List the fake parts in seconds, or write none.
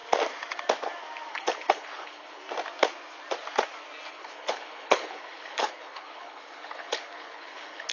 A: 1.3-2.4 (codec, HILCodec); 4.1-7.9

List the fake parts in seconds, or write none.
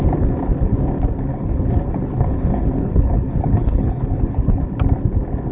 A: 1.3-4.6 (codec, HILCodec)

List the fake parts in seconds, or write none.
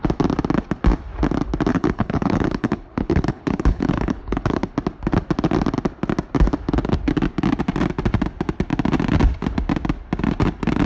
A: 1.7-4.7 (codec, HILCodec)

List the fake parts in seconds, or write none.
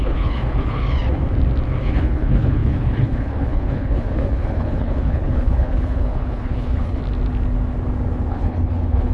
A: 0.0-0.8 (codec, HILCodec); 1.8-7.0; 8.3-9.1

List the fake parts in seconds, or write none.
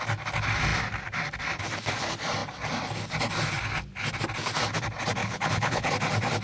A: 5.2-5.9 (codec, HILCodec)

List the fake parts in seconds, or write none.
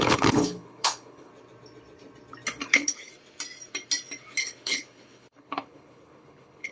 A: 0.0-1.3 (codec, HILCodec); 2.7-3.1; 4.4-6.7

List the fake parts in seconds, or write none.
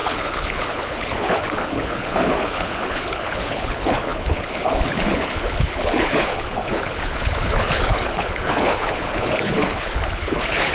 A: 0.0-10.7 (codec, HILCodec)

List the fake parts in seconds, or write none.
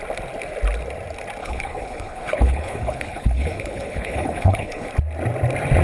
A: 1.4-4.9 (codec, HILCodec)